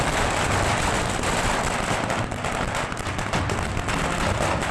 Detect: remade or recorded recorded